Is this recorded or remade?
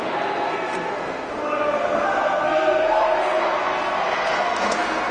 remade